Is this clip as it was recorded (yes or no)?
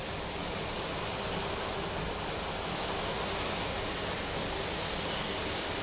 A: yes